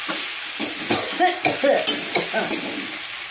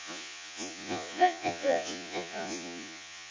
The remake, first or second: second